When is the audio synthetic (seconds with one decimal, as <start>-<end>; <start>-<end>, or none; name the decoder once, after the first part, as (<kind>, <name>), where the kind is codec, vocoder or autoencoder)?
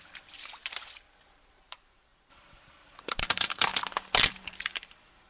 0.0-0.6 (vocoder, BigVGAN v2); 1.7-3.7; 4.3-5.3